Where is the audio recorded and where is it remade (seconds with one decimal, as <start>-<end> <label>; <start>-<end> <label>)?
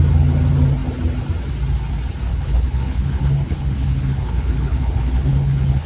0.0-2.3 recorded; 2.3-5.9 remade